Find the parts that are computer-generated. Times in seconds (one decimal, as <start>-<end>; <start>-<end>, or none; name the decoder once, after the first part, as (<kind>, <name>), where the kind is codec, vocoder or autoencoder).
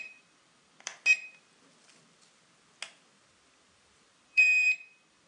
0.0-0.9 (vocoder, BigVGAN v2); 4.1-5.3